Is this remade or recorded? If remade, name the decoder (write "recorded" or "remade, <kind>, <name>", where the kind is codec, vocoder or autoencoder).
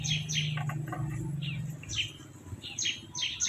recorded